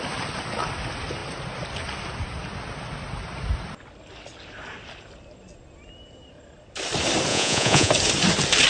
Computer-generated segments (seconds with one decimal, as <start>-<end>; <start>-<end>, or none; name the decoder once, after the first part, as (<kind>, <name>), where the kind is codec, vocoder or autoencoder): 7.3-7.9 (vocoder, Vocos)